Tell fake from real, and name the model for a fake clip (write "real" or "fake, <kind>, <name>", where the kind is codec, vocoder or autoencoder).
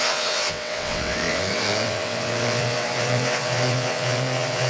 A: fake, vocoder, WaveNeXt